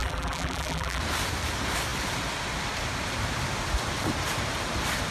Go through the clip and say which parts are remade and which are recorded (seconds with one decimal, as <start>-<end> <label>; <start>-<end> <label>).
0.0-1.0 remade; 1.0-5.1 recorded